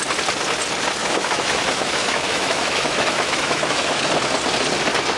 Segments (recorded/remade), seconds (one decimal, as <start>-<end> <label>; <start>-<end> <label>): 0.0-1.0 recorded; 1.0-4.1 remade; 4.1-5.2 recorded